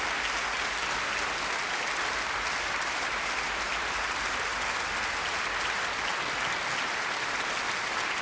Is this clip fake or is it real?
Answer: real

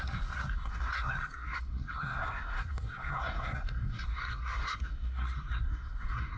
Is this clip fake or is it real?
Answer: fake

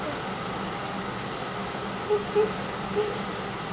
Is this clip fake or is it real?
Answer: real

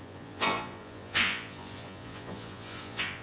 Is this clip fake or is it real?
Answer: fake